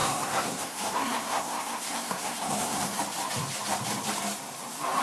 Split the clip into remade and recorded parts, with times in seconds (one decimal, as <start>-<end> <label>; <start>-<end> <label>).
0.0-3.0 remade; 3.0-5.0 recorded